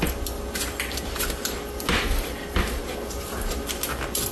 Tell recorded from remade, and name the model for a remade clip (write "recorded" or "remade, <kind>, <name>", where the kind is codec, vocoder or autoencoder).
recorded